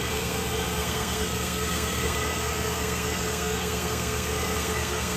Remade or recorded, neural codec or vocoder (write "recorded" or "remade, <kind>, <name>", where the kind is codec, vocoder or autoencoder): remade, codec, SNAC